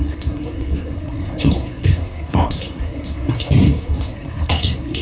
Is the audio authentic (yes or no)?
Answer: no